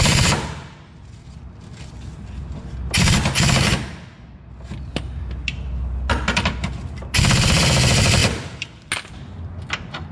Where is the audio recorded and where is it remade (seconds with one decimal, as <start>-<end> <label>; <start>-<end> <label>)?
0.0-8.2 recorded; 8.2-8.9 remade; 8.9-10.1 recorded